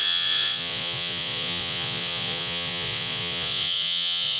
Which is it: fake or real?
fake